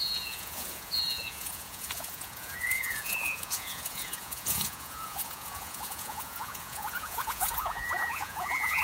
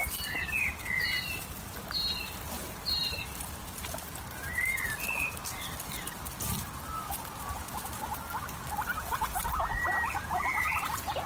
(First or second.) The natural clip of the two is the second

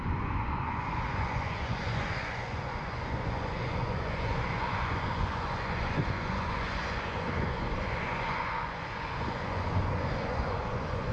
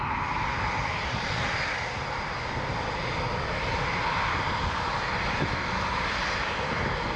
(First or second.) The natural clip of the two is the second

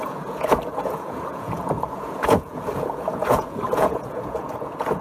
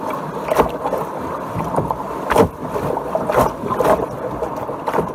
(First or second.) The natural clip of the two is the second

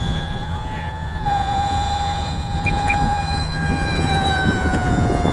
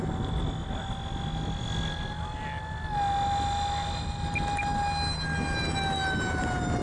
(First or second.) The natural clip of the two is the second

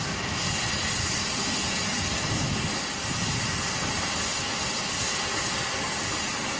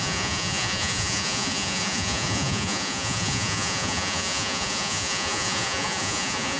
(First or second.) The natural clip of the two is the first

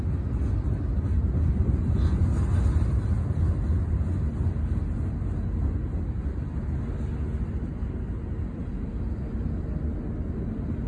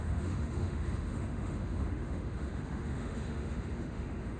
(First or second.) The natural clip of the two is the first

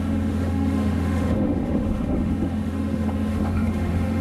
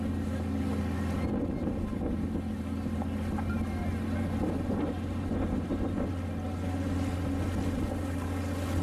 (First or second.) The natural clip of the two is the second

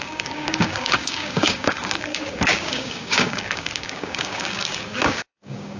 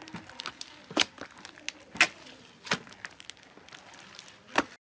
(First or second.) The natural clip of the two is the second